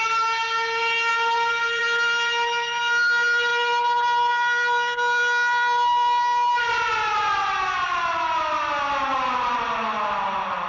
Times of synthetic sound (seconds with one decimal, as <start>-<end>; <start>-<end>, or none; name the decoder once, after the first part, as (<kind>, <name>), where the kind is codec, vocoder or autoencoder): 1.1-1.8 (vocoder, BigVGAN v2); 9.1-9.6

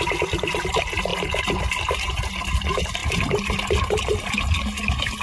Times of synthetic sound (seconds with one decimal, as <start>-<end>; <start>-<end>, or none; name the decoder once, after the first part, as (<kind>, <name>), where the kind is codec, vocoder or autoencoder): none

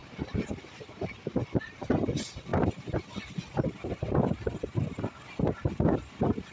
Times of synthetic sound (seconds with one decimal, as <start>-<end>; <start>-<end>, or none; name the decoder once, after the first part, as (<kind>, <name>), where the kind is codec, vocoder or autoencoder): none

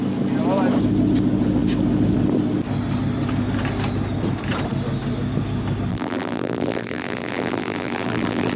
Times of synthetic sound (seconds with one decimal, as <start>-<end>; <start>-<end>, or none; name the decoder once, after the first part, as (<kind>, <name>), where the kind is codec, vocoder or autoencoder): 5.9-8.6 (vocoder, BigVGAN v2)

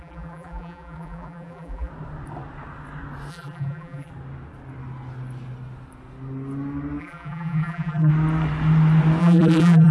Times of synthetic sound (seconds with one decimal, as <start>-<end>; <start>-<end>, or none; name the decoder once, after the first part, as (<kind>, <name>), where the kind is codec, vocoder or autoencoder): 0.0-1.9 (vocoder, BigVGAN v2); 3.3-4.1; 7.0-8.1; 9.2-9.9

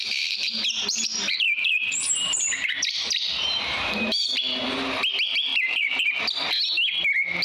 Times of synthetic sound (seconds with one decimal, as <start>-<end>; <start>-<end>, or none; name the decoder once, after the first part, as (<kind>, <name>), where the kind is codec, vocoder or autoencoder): 0.0-4.3 (vocoder, BigVGAN v2); 5.5-6.2